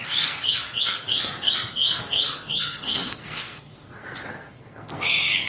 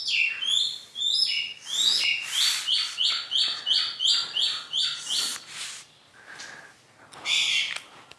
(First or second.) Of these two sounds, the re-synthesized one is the first